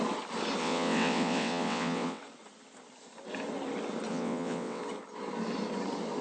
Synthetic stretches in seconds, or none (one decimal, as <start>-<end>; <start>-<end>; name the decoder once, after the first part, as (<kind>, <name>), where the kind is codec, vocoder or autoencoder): 0.6-2.2 (vocoder, WaveNeXt); 4.1-4.8